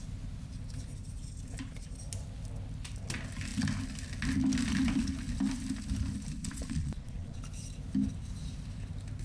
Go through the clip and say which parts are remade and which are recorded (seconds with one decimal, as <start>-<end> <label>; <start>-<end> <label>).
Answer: 0.0-6.4 recorded; 6.4-7.4 remade; 7.4-9.2 recorded